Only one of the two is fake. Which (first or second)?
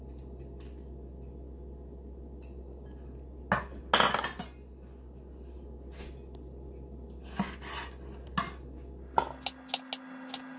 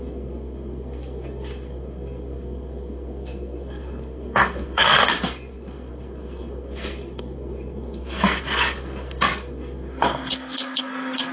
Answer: second